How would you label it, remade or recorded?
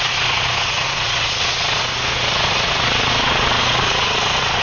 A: remade